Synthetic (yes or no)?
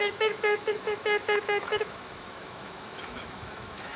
yes